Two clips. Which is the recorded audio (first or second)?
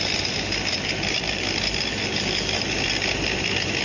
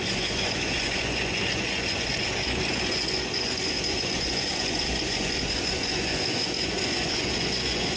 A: first